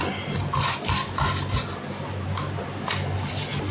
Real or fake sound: real